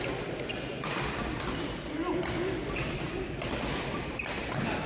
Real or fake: real